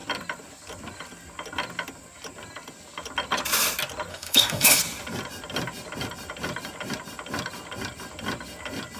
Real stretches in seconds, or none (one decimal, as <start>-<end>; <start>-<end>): 0.0-4.1; 4.8-9.0